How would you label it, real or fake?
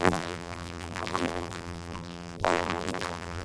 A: fake